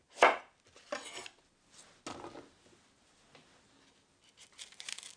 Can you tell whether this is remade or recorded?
recorded